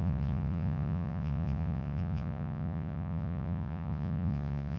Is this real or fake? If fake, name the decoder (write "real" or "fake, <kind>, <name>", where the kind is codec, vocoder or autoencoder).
fake, vocoder, Vocos